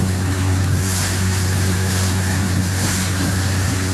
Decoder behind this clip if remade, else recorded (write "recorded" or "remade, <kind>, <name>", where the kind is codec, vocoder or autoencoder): remade, codec, SNAC